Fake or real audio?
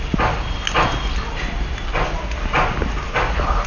real